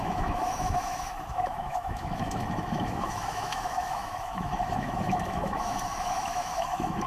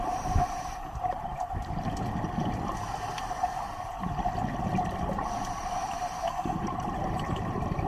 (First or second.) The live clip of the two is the second